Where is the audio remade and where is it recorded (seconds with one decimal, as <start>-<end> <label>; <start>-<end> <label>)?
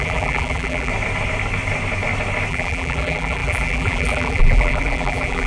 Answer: 0.0-0.9 remade; 0.9-2.5 recorded; 2.5-5.5 remade